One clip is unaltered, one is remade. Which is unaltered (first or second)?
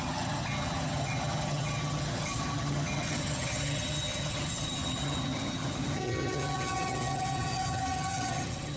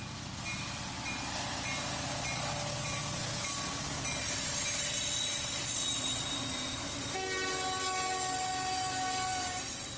second